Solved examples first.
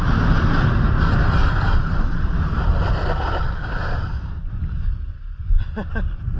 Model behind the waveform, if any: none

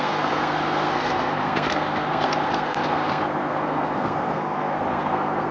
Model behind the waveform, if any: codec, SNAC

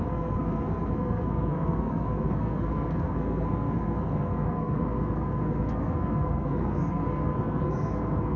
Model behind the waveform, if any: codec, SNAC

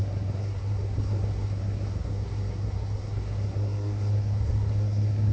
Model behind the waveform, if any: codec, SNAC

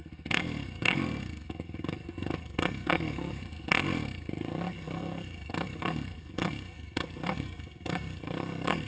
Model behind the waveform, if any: codec, SNAC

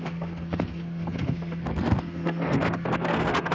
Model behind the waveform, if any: codec, SNAC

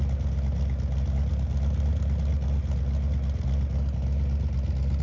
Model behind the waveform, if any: none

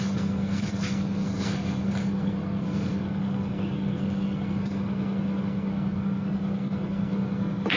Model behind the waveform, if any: codec, SNAC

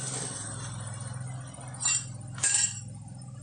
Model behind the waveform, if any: none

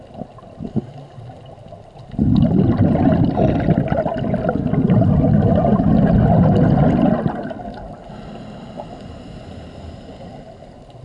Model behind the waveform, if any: none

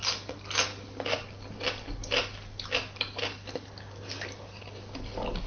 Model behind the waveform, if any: none